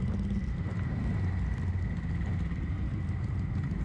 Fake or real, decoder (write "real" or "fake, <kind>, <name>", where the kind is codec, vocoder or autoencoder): real